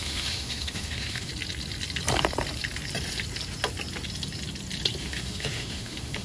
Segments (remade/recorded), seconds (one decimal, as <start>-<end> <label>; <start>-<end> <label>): 0.0-1.3 remade; 1.3-5.0 recorded; 5.0-6.2 remade